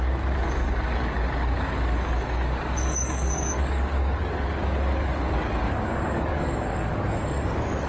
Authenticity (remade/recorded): remade